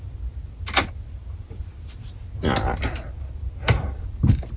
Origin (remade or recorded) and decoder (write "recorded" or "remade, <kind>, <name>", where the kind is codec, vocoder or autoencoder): recorded